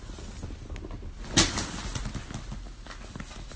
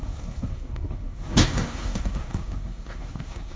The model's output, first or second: second